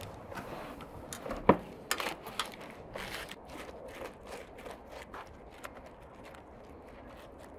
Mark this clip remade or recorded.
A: recorded